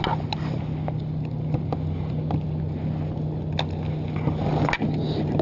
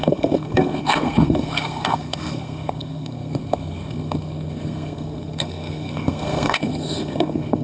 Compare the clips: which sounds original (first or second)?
first